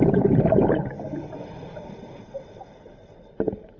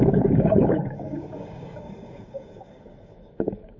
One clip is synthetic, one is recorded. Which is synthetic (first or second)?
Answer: second